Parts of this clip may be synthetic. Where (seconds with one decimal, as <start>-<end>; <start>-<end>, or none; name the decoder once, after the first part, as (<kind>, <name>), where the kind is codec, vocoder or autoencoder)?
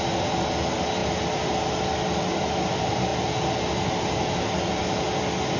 none